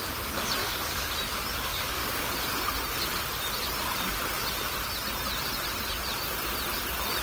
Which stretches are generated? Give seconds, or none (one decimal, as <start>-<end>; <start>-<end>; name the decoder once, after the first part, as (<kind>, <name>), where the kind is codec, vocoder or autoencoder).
0.6-1.1 (codec, DAC); 1.7-2.3